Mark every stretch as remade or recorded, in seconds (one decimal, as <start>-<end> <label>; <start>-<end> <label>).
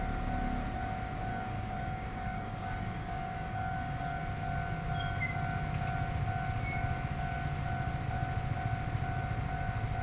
0.0-1.3 recorded; 1.3-4.2 remade; 4.2-10.0 recorded